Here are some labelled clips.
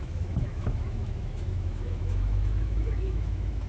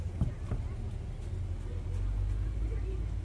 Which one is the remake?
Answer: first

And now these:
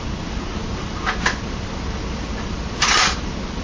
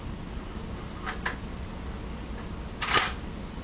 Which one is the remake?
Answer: first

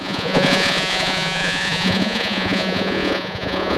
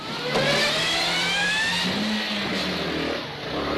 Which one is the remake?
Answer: first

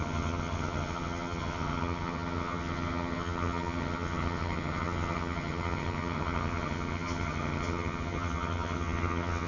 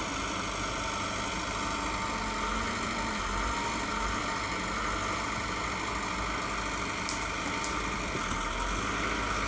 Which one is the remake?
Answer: first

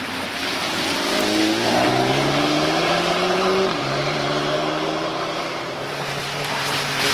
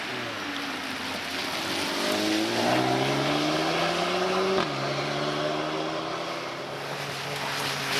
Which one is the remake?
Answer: first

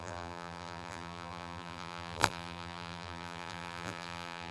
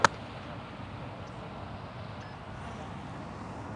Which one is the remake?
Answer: first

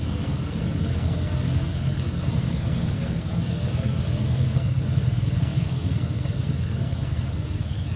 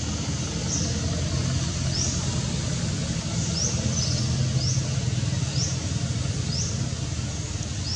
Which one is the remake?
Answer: first